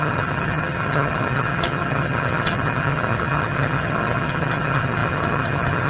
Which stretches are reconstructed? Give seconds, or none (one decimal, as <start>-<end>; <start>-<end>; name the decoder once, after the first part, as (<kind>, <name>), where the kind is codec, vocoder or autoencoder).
0.0-5.9 (vocoder, HiFi-GAN)